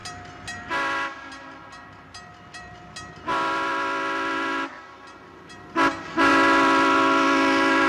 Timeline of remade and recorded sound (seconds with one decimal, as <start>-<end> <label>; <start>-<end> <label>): 0.0-7.9 recorded